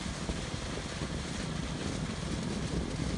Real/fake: real